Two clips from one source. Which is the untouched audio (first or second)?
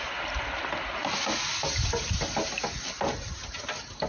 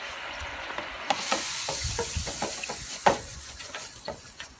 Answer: first